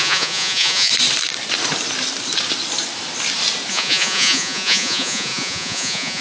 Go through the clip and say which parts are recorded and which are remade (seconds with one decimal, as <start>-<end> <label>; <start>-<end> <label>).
0.0-0.9 remade; 0.9-3.7 recorded; 3.7-6.2 remade